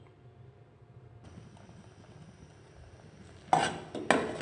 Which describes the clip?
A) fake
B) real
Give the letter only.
B